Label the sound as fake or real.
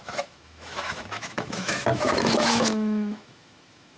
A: fake